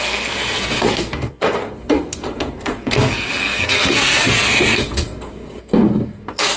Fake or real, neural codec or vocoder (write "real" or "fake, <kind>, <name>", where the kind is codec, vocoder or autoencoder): fake, codec, SNAC